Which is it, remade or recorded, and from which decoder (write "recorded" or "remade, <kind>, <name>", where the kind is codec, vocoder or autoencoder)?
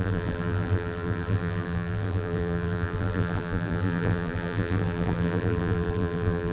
remade, vocoder, BigVGAN v2